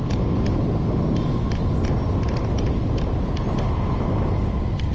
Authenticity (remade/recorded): recorded